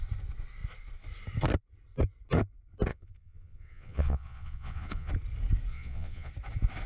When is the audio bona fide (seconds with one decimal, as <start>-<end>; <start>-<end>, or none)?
0.0-2.9; 5.1-5.7; 6.3-6.9